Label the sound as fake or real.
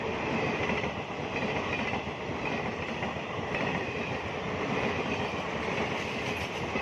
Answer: real